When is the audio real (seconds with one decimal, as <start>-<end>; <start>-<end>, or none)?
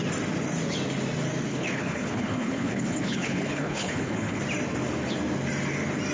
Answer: 0.0-1.5; 4.4-6.1